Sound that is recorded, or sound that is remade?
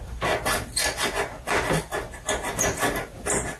recorded